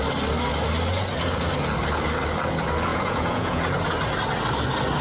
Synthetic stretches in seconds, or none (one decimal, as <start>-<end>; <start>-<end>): 2.9-3.6